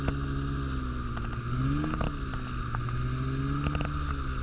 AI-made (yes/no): no